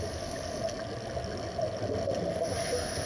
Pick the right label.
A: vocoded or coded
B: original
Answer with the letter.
B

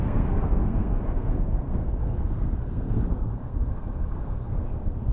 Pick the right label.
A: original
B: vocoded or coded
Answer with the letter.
B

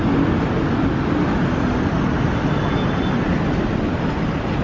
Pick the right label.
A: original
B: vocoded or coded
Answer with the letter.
A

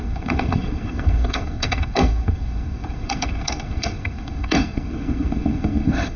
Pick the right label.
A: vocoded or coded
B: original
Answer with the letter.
A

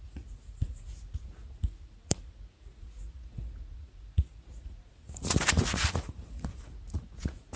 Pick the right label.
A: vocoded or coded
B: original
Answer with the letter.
A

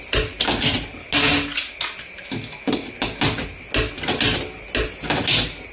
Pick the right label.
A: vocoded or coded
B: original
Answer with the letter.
B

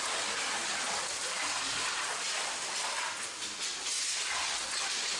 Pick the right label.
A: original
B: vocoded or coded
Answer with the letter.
A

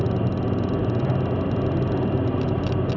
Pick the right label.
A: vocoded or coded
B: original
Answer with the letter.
B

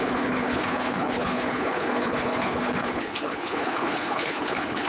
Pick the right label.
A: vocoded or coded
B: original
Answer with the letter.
A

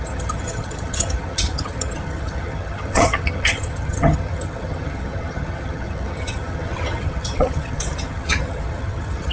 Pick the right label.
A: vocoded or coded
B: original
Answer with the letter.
A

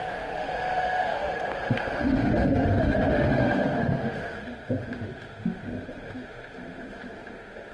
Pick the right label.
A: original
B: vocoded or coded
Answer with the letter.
B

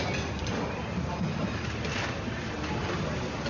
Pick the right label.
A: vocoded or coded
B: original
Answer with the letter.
B